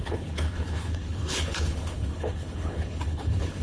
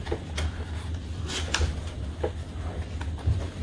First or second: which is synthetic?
first